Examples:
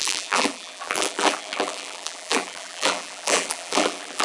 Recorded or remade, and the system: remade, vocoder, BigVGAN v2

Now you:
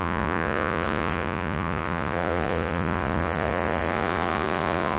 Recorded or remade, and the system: remade, vocoder, Vocos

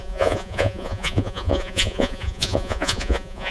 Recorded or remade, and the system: remade, vocoder, Vocos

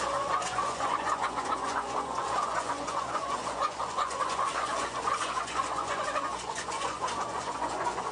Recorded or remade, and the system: remade, vocoder, Vocos